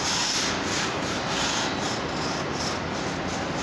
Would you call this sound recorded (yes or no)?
yes